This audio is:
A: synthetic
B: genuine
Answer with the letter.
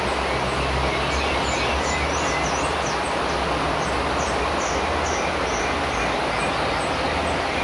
B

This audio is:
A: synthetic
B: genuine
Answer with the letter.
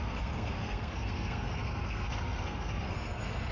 A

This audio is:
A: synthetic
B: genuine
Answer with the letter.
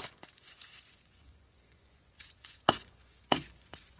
A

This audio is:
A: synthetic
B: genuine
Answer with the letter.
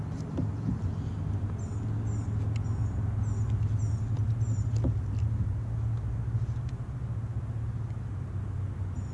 B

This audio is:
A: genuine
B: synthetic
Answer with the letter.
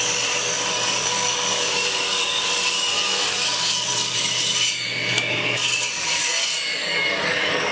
B